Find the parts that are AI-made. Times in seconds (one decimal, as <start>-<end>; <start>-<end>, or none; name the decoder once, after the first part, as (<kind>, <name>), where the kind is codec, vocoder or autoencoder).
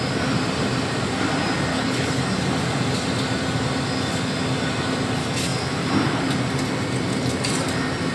1.7-2.2 (codec, HILCodec)